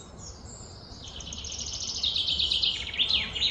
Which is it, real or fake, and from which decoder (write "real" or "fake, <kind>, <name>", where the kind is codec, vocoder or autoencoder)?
real